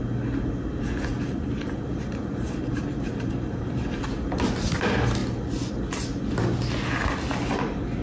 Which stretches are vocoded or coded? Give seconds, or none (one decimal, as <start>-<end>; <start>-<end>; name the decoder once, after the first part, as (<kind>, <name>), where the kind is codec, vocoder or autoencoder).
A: 1.1-4.0 (vocoder, BigVGAN v2)